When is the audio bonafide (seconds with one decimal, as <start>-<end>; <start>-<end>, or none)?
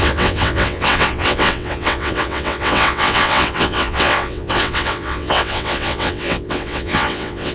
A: none